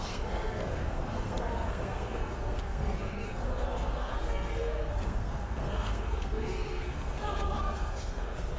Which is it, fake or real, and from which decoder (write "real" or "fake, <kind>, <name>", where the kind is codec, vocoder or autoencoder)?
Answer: fake, codec, SNAC